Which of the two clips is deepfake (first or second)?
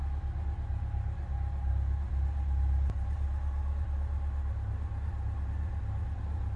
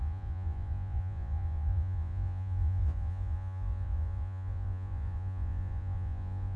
second